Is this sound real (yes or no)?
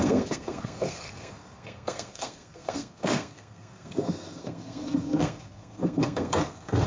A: no